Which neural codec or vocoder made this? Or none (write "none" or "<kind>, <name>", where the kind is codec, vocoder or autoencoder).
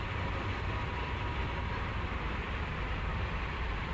vocoder, BigVGAN v2